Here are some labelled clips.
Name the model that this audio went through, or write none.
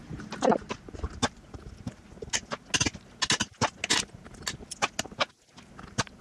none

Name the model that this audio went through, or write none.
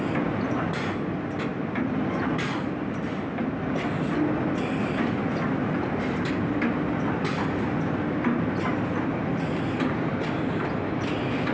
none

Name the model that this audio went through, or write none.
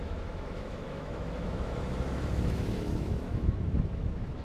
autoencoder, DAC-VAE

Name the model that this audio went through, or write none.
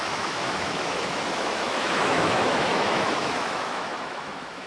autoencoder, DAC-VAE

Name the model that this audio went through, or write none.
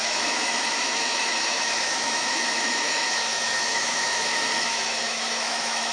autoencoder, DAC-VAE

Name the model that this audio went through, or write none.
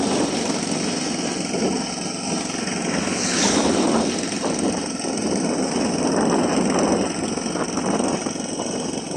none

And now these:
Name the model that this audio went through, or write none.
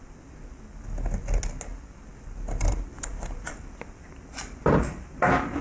none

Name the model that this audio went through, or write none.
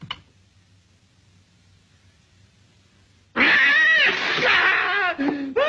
none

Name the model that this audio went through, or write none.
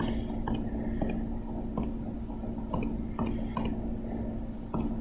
none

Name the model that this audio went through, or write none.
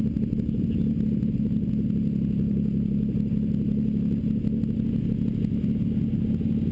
none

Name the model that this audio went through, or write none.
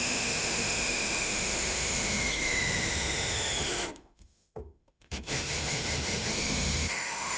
autoencoder, DAC-VAE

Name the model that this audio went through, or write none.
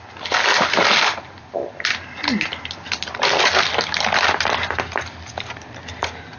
none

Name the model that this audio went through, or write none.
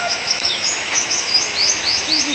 autoencoder, DAC-VAE